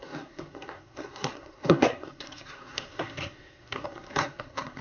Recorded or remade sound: remade